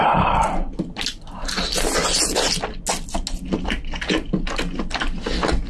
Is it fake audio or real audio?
real